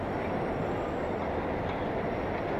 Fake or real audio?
real